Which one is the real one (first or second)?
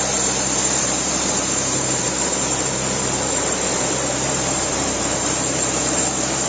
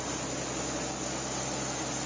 second